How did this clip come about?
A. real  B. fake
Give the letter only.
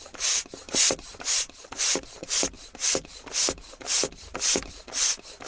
A